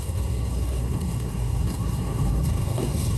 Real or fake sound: fake